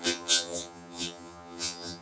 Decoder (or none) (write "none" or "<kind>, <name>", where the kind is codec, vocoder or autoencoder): vocoder, HiFi-GAN